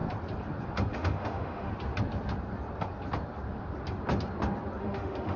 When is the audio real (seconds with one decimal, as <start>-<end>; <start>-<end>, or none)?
0.0-0.9; 1.7-4.8